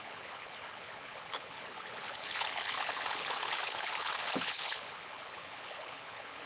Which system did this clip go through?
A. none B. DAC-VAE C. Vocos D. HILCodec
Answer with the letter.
D